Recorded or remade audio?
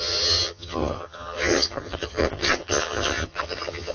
remade